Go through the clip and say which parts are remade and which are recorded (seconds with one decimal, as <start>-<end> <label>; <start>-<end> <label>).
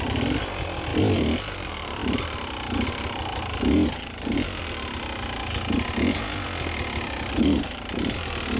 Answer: 0.0-8.6 recorded